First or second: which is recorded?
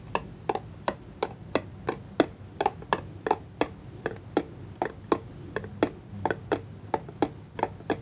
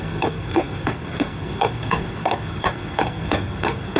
first